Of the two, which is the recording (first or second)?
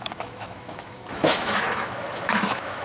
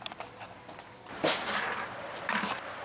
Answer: second